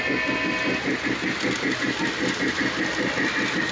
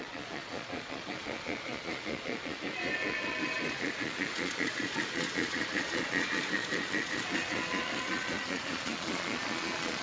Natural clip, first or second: first